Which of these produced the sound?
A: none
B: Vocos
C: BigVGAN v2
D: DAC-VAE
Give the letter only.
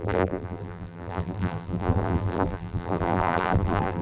C